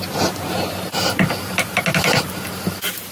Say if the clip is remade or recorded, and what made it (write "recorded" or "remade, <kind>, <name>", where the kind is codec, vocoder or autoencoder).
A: recorded